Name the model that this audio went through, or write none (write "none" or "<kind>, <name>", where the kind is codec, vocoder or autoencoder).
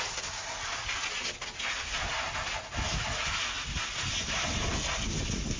none